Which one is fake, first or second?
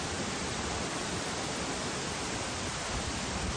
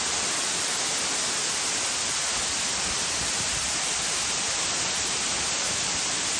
first